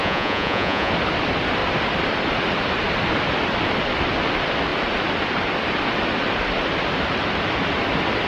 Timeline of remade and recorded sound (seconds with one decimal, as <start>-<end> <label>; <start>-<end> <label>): 0.0-0.9 remade; 0.9-8.3 recorded